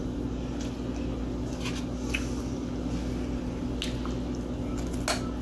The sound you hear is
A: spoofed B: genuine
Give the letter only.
B